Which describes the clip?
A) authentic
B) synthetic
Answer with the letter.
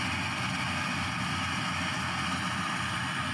A